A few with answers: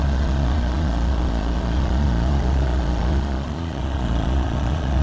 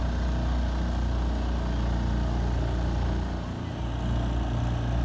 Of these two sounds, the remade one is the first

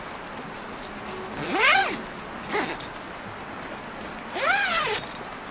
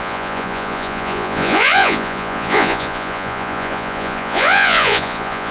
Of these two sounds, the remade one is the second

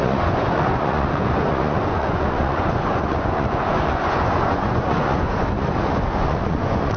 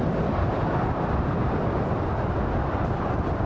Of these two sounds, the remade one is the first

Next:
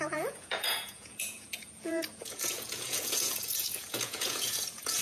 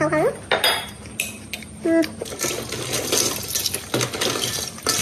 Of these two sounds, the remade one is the first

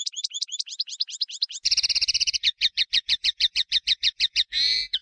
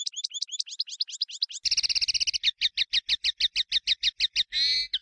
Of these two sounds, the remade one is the first